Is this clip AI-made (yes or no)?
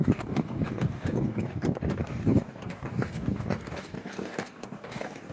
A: yes